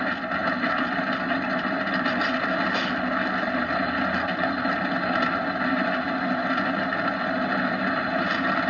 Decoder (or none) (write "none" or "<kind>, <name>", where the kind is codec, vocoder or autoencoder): none